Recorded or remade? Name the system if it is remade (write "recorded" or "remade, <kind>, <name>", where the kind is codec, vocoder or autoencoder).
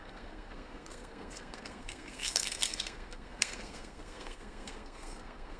remade, codec, SNAC